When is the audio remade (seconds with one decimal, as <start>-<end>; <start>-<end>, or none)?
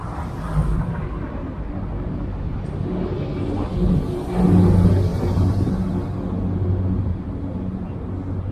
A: 5.1-5.7